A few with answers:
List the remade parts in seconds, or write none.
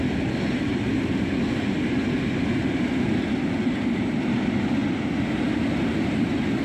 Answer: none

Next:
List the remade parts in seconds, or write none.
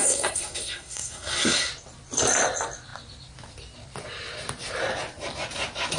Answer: 0.0-1.7 (codec, SNAC)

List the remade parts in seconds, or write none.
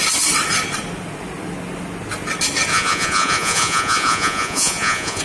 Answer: 2.7-5.2 (vocoder, Vocos)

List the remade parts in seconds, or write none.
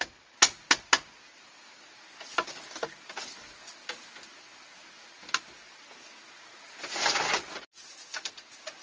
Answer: none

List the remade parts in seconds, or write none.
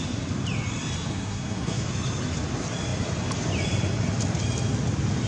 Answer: 1.1-1.9 (codec, SNAC)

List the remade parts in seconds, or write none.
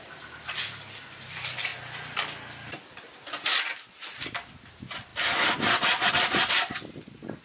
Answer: none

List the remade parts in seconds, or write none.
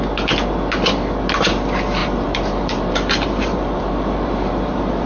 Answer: 2.0-5.1 (vocoder, BigVGAN v2)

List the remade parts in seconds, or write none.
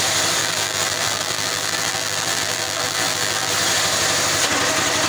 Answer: 0.4-3.5 (vocoder, BigVGAN v2)